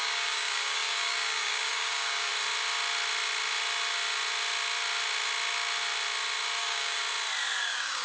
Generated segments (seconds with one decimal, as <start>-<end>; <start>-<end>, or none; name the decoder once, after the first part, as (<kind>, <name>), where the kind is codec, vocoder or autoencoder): 0.0-2.3 (codec, DAC); 6.6-7.0; 7.6-8.0